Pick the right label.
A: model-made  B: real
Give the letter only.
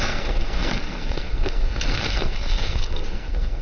A